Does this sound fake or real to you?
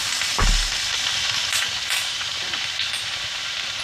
real